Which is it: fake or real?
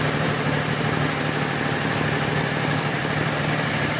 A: fake